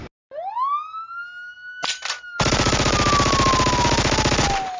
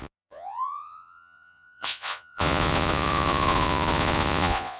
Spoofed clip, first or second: second